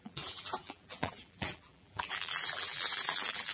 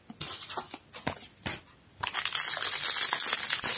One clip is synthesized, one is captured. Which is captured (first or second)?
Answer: second